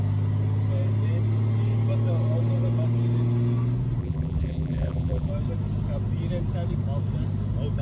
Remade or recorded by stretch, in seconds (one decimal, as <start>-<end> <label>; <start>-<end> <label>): 0.0-4.0 recorded; 4.0-5.3 remade; 5.3-7.8 recorded